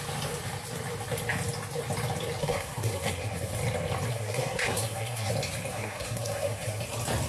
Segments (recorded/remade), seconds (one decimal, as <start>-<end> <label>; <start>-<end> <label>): 0.0-2.4 recorded; 2.4-3.5 remade; 3.5-4.1 recorded; 4.1-5.3 remade; 5.3-5.7 recorded; 5.7-6.8 remade; 6.8-7.3 recorded